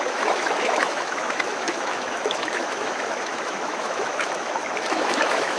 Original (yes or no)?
no